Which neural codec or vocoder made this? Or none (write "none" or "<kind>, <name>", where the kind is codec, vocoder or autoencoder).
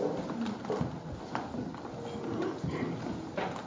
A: none